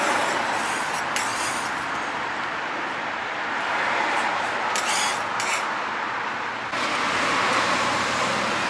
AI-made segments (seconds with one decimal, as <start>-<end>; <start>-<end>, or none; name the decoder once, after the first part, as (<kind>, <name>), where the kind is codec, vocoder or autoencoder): 1.3-5.0 (vocoder, BigVGAN v2)